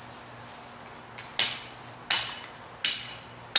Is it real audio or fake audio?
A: real